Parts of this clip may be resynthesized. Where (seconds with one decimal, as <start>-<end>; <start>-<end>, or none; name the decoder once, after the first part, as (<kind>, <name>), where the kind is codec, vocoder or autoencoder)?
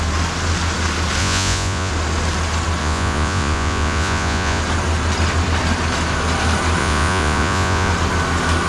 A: 1.2-1.9 (vocoder, Vocos); 2.8-4.6; 6.8-7.9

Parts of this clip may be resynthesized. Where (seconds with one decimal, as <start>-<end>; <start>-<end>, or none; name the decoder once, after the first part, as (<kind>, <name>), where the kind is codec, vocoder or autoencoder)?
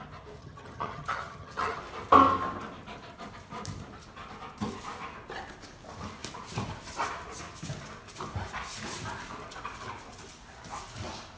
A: 0.4-1.8 (vocoder, HiFi-GAN)